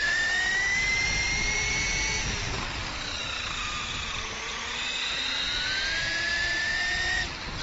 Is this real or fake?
real